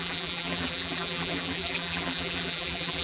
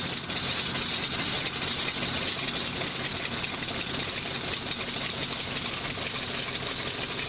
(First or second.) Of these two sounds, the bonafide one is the second